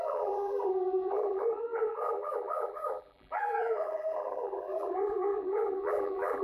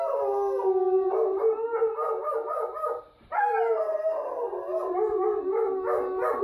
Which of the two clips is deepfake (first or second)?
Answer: first